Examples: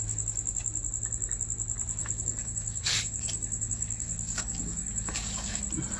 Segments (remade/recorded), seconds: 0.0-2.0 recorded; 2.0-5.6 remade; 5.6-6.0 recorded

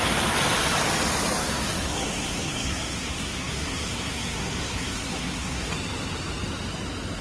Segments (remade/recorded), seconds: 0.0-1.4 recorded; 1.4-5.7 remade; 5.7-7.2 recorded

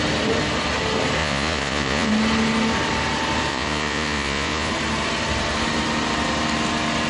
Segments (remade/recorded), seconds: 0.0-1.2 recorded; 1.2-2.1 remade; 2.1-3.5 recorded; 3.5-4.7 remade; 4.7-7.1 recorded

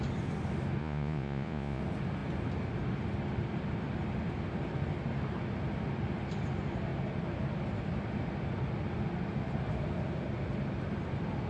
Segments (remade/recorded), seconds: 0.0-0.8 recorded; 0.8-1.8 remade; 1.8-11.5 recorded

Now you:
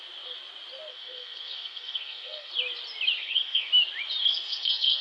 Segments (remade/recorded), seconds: 0.0-0.9 recorded; 0.9-2.5 remade; 2.5-3.2 recorded; 3.2-3.7 remade; 3.7-4.2 recorded; 4.2-5.0 remade